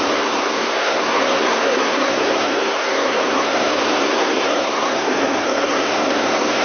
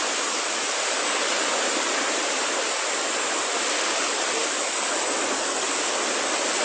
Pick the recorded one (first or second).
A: second